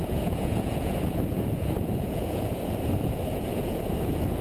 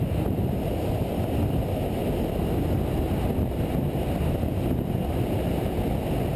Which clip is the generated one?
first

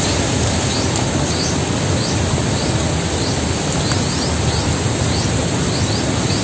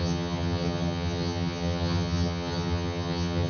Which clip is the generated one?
second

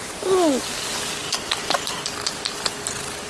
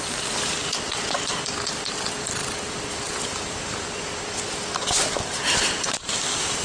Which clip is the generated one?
second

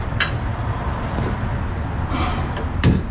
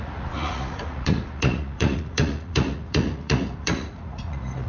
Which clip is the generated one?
second